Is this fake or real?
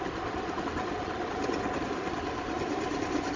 real